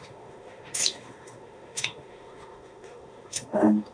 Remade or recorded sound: remade